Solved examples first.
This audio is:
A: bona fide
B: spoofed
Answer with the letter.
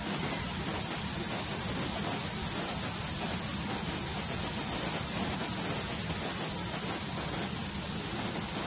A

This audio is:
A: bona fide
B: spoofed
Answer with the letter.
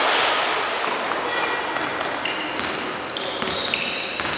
A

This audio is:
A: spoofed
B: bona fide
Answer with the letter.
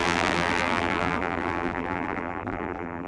A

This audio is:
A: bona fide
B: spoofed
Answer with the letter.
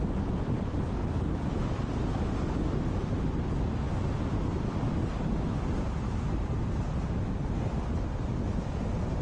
A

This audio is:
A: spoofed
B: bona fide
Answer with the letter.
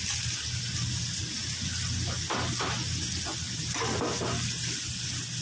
B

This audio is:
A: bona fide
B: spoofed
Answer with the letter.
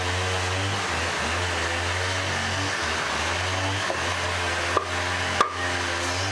A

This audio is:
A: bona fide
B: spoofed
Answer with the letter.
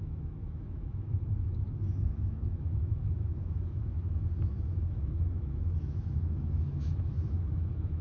B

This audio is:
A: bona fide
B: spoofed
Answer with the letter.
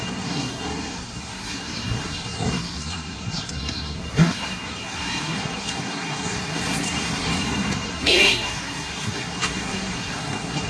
B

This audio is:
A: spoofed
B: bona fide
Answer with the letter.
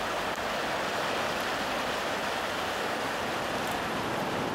B